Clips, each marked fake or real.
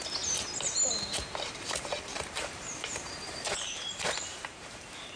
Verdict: fake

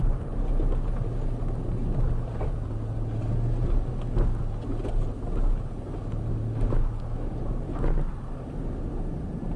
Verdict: real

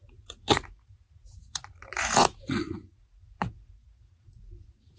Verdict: fake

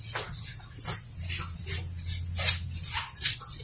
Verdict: real